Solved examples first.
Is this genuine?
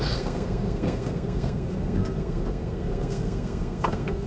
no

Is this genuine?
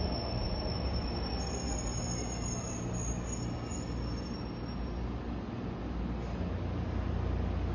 yes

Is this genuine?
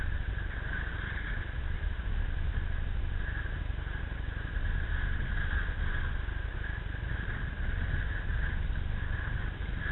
no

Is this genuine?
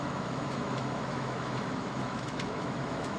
no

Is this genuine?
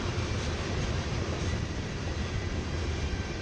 yes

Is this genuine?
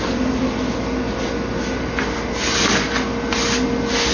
yes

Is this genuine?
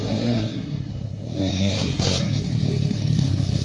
no